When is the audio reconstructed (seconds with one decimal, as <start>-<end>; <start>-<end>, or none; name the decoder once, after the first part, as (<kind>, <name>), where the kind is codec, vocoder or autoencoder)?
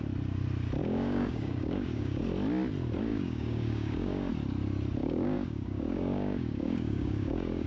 0.8-2.2 (codec, DAC); 3.1-4.3; 5.0-7.7